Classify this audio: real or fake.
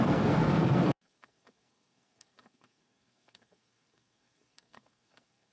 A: fake